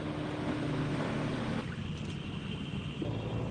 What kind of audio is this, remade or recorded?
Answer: recorded